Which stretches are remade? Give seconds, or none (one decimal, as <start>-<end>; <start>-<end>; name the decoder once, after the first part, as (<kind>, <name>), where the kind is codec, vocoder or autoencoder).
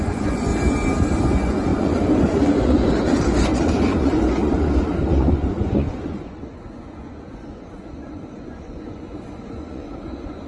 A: 0.0-0.5 (vocoder, Vocos); 1.2-10.5